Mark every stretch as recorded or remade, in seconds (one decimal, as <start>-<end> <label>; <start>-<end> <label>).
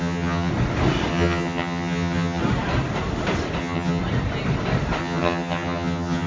0.0-0.5 remade; 0.5-1.1 recorded; 1.1-2.4 remade; 2.4-3.6 recorded; 3.6-4.0 remade; 4.0-5.0 recorded; 5.0-6.3 remade